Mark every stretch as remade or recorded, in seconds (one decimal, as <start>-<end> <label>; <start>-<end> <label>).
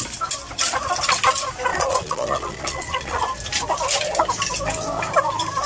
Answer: 0.0-1.7 recorded; 1.7-3.2 remade; 3.2-5.7 recorded